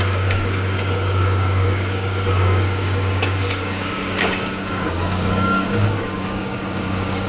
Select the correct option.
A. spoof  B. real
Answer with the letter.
A